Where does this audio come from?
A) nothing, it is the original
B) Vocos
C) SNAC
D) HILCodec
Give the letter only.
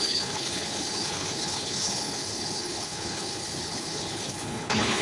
D